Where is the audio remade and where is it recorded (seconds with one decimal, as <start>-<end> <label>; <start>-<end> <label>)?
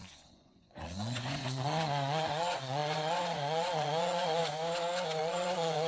0.0-4.4 remade; 4.4-5.2 recorded; 5.2-5.9 remade